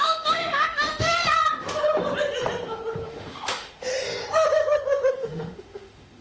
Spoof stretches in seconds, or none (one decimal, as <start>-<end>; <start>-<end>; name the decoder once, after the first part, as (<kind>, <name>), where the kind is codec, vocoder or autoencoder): 0.0-1.1 (autoencoder, DAC-VAE); 3.1-3.9; 5.1-6.2